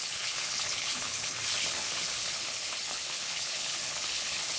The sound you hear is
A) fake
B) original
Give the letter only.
A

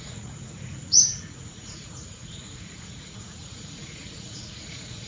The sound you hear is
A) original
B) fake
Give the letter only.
B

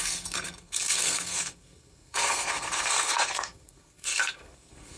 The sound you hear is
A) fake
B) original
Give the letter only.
A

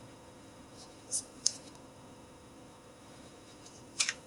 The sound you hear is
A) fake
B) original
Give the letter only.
A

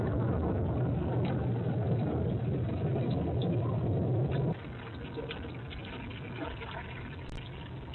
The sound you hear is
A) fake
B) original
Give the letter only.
B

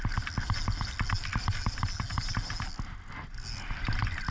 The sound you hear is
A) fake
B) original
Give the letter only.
B